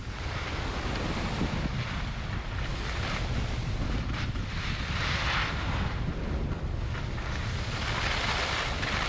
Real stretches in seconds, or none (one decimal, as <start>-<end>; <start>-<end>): 0.0-9.1